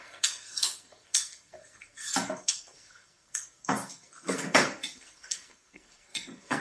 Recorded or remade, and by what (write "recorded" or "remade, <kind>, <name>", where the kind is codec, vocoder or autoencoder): remade, codec, SNAC